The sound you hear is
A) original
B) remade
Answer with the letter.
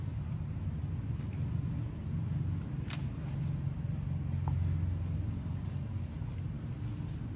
A